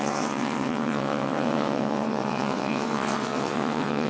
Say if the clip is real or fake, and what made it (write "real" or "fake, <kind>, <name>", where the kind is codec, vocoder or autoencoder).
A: fake, vocoder, WaveNeXt